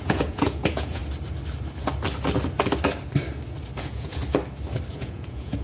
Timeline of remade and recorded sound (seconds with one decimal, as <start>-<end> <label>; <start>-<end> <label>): 0.0-1.0 remade; 1.0-3.8 recorded; 3.8-4.2 remade; 4.2-4.9 recorded; 4.9-5.6 remade